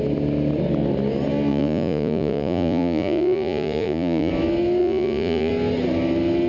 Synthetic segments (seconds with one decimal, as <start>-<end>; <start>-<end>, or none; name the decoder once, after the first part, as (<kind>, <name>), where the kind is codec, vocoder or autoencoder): 1.5-4.3 (vocoder, Vocos); 4.8-5.5